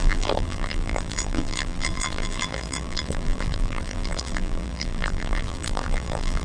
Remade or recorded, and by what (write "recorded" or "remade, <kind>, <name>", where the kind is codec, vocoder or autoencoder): remade, vocoder, BigVGAN v2